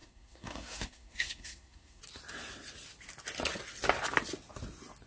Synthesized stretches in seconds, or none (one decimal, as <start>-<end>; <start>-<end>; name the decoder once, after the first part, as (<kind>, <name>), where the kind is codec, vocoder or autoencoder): 0.0-2.0 (codec, SNAC)